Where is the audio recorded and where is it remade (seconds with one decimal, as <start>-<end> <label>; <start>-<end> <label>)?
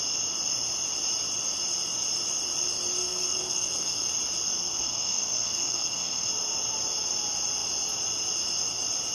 0.0-3.0 recorded; 3.0-4.1 remade; 4.1-4.5 recorded; 4.5-6.3 remade; 6.3-9.1 recorded